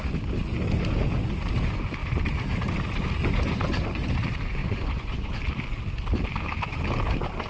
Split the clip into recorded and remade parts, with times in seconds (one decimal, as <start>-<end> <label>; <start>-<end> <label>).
0.0-4.6 recorded; 4.6-5.3 remade; 5.3-7.5 recorded

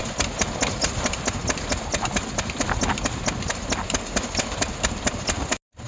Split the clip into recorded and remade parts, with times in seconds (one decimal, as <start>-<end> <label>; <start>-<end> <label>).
0.0-5.9 recorded

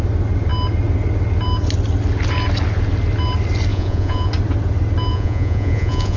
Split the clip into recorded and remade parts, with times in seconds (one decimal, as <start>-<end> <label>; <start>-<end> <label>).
0.0-3.7 recorded; 3.7-4.3 remade; 4.3-5.1 recorded; 5.1-6.2 remade

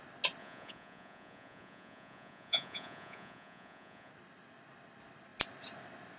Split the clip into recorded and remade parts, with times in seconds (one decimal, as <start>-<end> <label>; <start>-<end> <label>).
0.0-0.4 recorded; 0.4-4.1 remade; 4.1-6.2 recorded

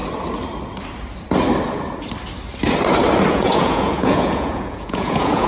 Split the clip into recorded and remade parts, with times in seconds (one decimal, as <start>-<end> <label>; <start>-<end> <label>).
0.0-3.3 recorded; 3.3-5.5 remade

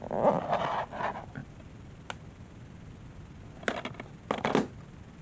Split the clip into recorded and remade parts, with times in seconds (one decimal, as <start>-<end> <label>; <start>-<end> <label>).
0.0-5.2 recorded

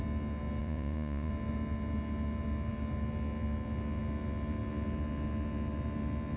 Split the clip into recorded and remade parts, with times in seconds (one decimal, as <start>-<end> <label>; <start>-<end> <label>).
0.0-0.6 recorded; 0.6-1.3 remade; 1.3-6.4 recorded

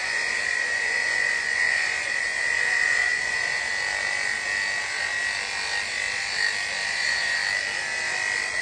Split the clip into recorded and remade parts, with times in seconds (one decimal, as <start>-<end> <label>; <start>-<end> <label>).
0.0-3.7 remade; 3.7-6.9 recorded; 6.9-7.4 remade; 7.4-8.6 recorded